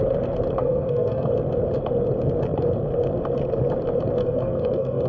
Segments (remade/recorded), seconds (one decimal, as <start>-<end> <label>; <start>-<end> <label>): 0.0-0.6 recorded; 0.6-1.3 remade; 1.3-4.2 recorded; 4.2-5.1 remade